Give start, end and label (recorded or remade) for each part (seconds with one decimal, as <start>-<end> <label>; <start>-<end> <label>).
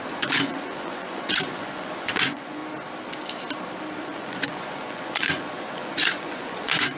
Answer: 0.0-2.6 remade; 2.6-4.0 recorded; 4.0-7.0 remade